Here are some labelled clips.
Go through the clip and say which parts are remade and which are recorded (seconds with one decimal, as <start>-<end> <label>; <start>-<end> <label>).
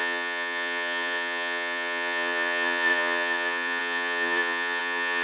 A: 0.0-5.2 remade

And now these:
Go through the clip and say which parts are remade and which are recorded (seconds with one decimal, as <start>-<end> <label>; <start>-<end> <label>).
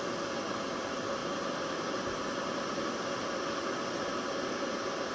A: 0.0-5.1 recorded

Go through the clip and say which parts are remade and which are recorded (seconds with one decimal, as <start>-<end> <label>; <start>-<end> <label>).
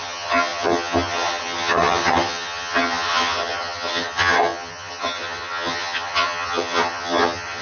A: 0.0-7.6 remade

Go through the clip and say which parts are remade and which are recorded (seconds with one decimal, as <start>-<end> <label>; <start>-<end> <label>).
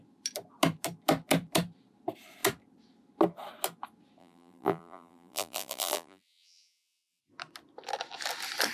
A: 0.0-4.2 recorded; 4.2-7.2 remade; 7.2-8.7 recorded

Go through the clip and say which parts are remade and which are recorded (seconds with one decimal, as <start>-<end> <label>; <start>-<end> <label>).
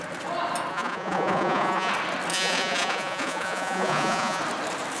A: 0.0-0.7 recorded; 0.7-1.9 remade; 1.9-2.3 recorded; 2.3-4.4 remade; 4.4-5.0 recorded